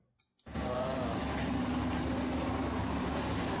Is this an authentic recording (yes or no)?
yes